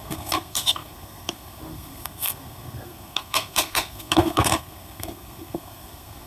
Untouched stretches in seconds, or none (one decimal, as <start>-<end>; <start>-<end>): none